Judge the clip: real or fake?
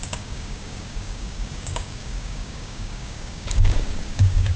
fake